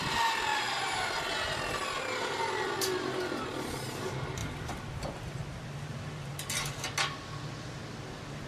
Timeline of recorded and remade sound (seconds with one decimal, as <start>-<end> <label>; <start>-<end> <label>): 0.0-4.4 recorded; 4.4-6.8 remade; 6.8-8.5 recorded